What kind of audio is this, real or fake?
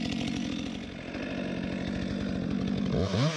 real